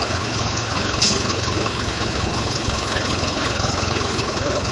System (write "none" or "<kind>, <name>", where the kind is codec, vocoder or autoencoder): codec, HILCodec